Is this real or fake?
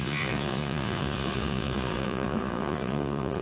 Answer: fake